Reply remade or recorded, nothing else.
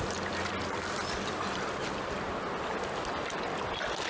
recorded